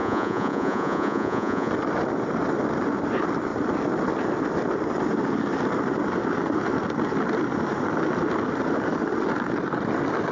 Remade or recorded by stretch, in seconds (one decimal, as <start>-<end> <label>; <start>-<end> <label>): 0.0-1.7 remade; 1.7-10.3 recorded

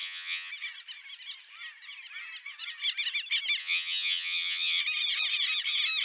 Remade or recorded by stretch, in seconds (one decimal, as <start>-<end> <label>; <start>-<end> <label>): 0.0-0.5 remade; 0.5-3.6 recorded; 3.6-4.8 remade; 4.8-6.0 recorded

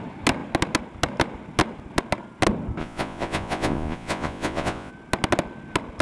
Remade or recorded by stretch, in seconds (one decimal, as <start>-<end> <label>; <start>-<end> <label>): 0.0-2.8 recorded; 2.8-4.9 remade; 4.9-6.0 recorded

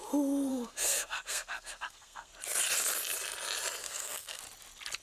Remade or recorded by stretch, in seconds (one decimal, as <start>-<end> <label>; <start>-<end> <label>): 0.0-0.5 recorded; 0.5-2.3 remade; 2.3-3.8 recorded; 3.8-4.4 remade; 4.4-5.0 recorded